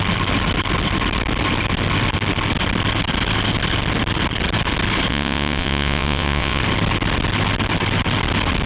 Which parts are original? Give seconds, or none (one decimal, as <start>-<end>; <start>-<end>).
0.0-5.1; 6.6-8.7